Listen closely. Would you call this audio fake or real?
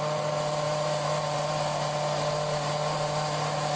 real